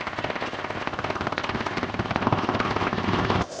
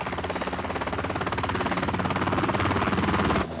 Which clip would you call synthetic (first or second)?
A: first